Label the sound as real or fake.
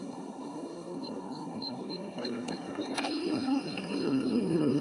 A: fake